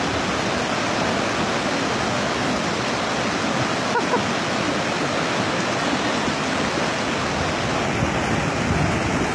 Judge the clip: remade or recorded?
recorded